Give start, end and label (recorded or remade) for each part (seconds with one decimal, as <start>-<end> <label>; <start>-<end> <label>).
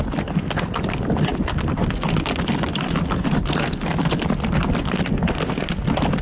0.0-6.2 recorded